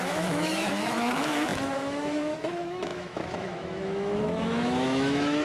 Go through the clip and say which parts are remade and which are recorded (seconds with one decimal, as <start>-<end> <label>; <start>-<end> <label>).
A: 0.0-5.4 remade